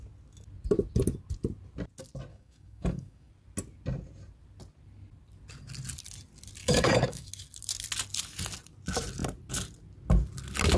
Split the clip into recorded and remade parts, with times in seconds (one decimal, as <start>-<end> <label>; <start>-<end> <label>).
0.0-2.3 recorded; 2.3-3.3 remade; 3.3-6.6 recorded; 6.6-7.3 remade; 7.3-10.8 recorded